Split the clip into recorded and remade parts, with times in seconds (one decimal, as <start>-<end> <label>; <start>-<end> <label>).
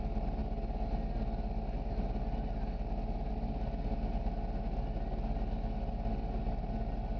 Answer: 0.0-7.2 recorded